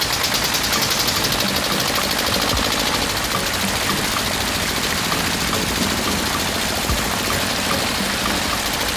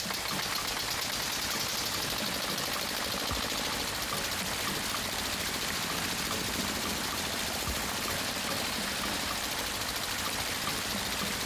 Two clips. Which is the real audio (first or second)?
first